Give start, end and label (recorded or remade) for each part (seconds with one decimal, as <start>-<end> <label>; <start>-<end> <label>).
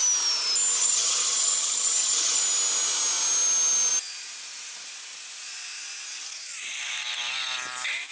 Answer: 0.0-0.8 recorded; 0.8-2.4 remade; 2.4-8.1 recorded